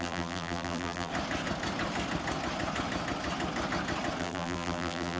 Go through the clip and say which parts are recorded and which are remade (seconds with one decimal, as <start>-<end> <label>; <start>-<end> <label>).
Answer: 0.0-1.1 remade; 1.1-4.2 recorded; 4.2-5.2 remade